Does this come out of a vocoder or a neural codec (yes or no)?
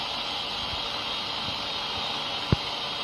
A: no